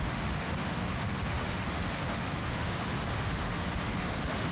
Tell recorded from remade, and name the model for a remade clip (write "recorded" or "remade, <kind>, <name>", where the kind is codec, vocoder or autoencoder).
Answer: remade, autoencoder, DAC-VAE